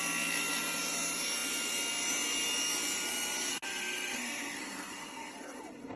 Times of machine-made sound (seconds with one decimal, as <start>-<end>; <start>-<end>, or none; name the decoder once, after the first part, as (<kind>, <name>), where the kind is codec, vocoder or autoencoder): 3.5-5.6 (codec, SNAC)